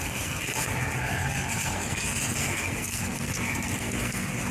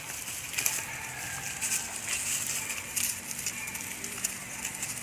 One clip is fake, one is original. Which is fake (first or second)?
first